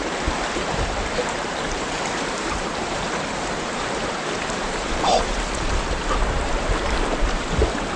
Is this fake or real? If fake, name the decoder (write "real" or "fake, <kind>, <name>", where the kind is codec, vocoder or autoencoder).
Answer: fake, vocoder, BigVGAN v2